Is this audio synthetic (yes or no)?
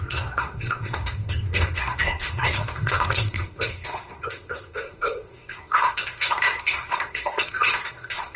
yes